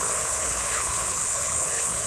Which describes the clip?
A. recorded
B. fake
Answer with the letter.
B